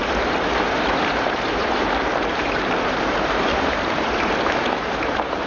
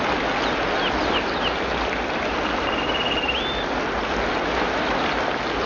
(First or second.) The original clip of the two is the second